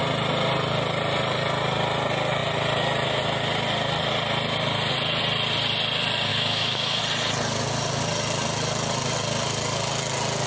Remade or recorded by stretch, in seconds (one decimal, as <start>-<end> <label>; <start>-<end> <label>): 0.0-6.3 recorded; 6.3-7.0 remade; 7.0-10.5 recorded